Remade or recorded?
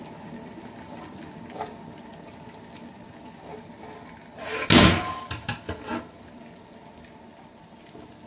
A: recorded